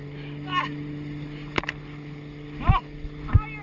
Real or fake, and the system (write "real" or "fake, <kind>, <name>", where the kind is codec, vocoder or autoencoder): real